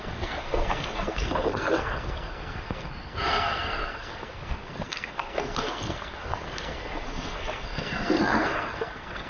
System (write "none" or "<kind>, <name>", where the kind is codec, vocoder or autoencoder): codec, SNAC